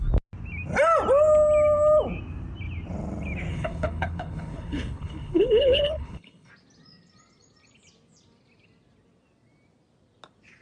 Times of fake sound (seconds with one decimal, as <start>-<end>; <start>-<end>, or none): 3.5-6.5